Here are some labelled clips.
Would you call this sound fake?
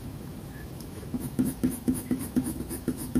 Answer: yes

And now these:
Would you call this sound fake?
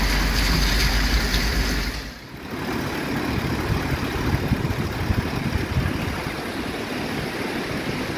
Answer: no